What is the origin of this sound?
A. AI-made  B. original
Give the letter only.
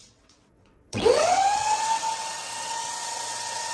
A